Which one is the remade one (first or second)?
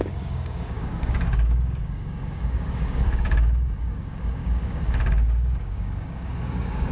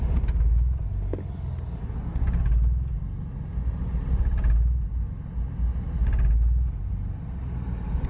first